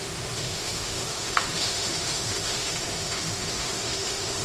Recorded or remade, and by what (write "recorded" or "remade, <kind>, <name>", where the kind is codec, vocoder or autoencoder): remade, autoencoder, DAC-VAE